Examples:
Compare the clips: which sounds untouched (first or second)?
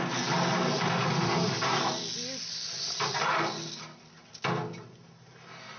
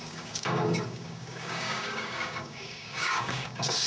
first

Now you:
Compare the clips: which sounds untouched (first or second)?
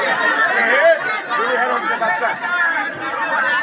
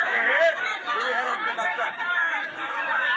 first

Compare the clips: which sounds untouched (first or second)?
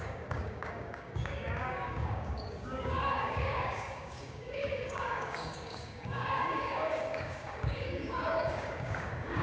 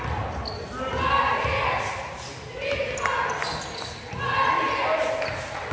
second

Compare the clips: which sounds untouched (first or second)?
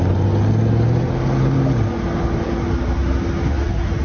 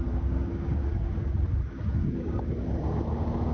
first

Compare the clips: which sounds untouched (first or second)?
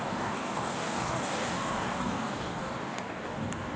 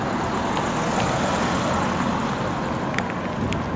second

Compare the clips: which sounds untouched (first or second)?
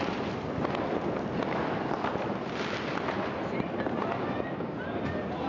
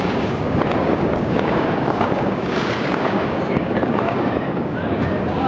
first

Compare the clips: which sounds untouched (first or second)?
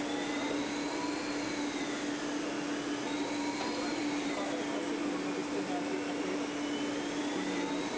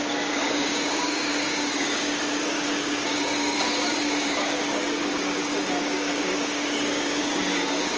first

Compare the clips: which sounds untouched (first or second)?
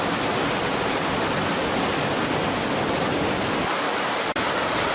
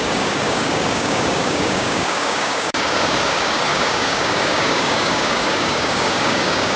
first